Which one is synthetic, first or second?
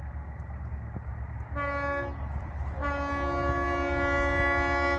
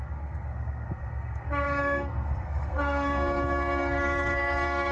second